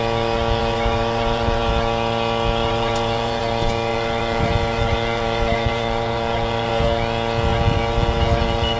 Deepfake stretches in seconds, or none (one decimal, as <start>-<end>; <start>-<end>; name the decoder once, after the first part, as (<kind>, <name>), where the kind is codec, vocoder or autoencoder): 0.6-1.7 (vocoder, BigVGAN v2); 2.6-3.4; 3.9-6.7; 7.5-8.8